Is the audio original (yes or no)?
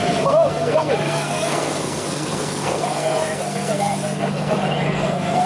no